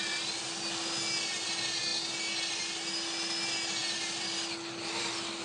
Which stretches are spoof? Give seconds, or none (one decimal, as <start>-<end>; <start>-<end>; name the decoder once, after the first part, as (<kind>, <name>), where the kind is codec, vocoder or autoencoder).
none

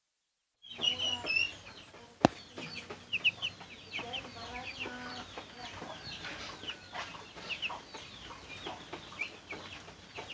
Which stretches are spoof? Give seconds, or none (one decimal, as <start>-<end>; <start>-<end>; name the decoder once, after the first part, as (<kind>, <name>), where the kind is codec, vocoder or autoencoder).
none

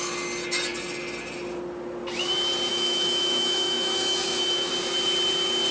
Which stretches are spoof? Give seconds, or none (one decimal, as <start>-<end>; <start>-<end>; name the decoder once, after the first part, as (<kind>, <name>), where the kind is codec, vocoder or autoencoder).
2.7-4.7 (autoencoder, DAC-VAE)

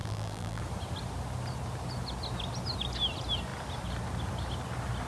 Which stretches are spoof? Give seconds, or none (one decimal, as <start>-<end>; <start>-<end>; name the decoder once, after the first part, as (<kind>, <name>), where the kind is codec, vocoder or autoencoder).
0.0-0.6 (vocoder, BigVGAN v2)

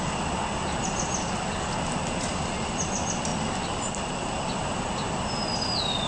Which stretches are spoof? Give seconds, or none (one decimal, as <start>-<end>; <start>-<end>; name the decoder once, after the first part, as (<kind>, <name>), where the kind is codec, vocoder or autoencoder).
none

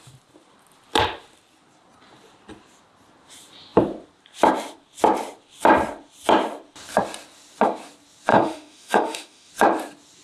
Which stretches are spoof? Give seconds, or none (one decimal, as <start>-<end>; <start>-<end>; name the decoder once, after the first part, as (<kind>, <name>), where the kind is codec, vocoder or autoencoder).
8.3-9.5 (autoencoder, DAC-VAE)

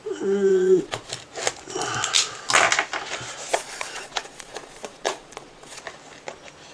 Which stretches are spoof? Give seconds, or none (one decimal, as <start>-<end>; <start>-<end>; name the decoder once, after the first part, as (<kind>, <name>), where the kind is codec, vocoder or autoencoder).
0.5-1.1 (vocoder, Vocos); 3.5-5.8

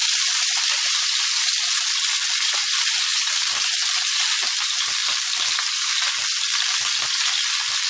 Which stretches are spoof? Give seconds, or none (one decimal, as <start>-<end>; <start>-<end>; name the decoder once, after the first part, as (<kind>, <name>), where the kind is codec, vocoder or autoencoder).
0.0-1.0 (vocoder, BigVGAN v2)